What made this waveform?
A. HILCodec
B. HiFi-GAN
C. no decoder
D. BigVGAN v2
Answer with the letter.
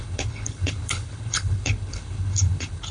A